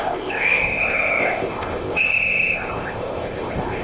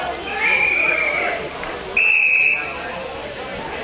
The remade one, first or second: first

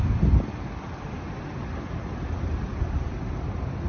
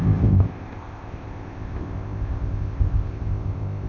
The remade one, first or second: second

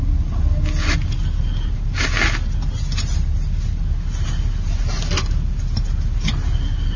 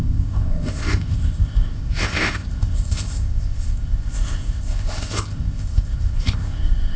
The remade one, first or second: second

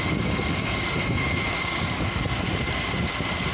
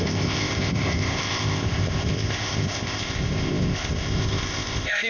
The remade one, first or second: second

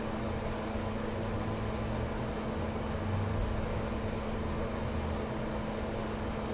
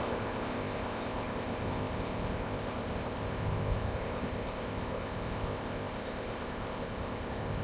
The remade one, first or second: second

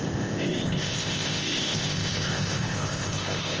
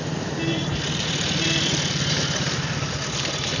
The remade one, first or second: first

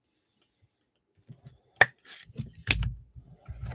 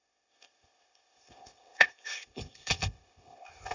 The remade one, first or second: second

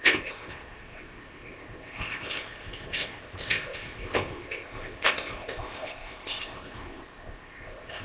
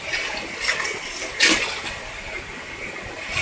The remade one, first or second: first